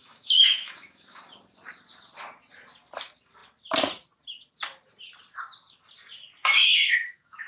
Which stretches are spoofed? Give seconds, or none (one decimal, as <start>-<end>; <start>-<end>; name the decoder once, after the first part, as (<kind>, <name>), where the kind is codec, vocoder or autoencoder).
0.0-1.2 (autoencoder, DAC-VAE); 6.4-7.5

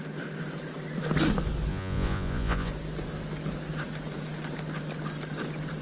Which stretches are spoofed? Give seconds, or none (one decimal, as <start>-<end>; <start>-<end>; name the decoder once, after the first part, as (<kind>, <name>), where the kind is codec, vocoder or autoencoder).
1.7-2.7 (vocoder, Vocos)